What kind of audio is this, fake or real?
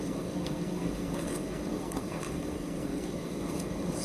fake